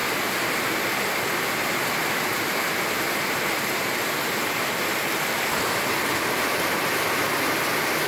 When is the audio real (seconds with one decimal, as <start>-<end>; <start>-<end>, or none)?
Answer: none

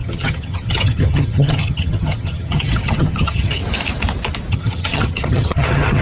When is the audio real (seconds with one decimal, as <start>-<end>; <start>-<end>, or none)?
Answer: 3.6-4.5